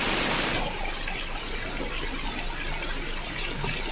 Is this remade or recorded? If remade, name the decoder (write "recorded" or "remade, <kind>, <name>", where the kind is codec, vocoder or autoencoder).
recorded